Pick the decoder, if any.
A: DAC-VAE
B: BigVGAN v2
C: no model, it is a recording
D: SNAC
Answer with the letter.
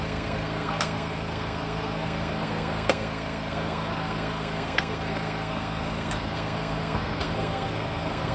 D